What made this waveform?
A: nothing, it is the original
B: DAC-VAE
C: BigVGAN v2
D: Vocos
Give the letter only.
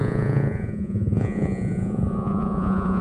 D